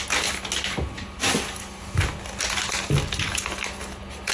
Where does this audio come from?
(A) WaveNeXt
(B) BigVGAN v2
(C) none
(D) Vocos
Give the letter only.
C